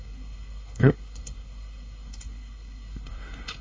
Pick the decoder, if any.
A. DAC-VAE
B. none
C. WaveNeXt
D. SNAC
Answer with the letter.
D